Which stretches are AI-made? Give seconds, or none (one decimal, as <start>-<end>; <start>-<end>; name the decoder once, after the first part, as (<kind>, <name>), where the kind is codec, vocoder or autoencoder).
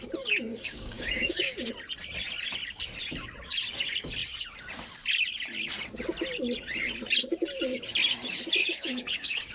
0.5-1.7 (codec, DAC); 8.6-9.5